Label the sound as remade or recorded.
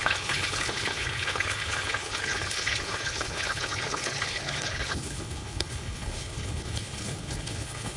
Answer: remade